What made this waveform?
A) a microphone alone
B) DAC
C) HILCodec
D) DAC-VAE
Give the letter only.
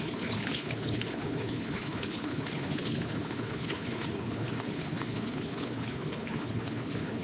C